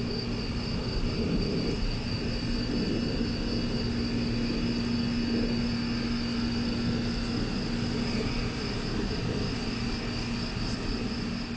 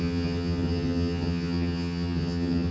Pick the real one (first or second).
first